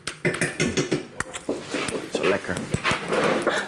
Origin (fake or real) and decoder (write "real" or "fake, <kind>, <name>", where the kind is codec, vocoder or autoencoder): real